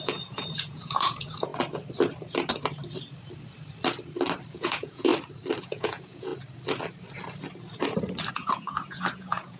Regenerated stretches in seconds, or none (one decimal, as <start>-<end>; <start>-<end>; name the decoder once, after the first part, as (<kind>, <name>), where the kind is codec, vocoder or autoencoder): 0.0-1.5 (vocoder, Vocos); 4.5-5.1; 5.6-6.3; 8.3-9.6